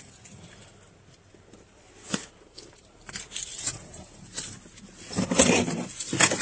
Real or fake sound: real